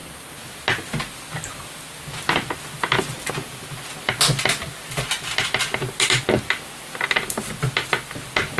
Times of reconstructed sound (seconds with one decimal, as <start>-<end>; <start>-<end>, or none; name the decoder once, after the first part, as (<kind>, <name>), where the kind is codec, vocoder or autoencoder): none